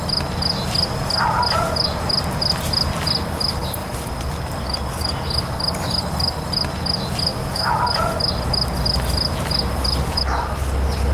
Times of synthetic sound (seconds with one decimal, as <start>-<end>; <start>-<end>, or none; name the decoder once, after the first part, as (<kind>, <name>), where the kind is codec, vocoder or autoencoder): 7.3-7.8 (autoencoder, DAC-VAE)